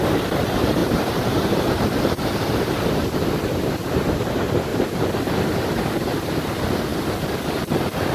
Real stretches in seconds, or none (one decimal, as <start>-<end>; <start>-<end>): 4.7-5.8; 6.9-7.6